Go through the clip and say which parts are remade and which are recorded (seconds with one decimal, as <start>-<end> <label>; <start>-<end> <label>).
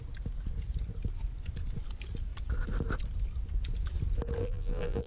0.0-4.4 recorded; 4.4-5.1 remade